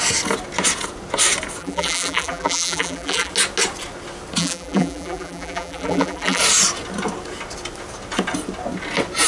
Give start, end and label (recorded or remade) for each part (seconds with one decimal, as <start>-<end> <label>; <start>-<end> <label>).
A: 0.0-1.6 recorded; 1.6-3.3 remade; 3.3-4.4 recorded; 4.4-6.4 remade; 6.4-9.3 recorded